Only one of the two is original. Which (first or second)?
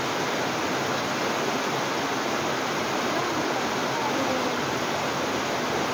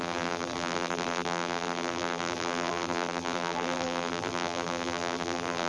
first